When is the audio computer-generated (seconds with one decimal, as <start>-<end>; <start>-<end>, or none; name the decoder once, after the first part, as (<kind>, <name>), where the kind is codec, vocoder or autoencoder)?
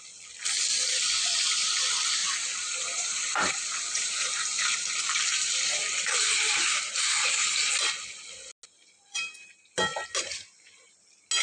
2.2-7.0 (vocoder, BigVGAN v2)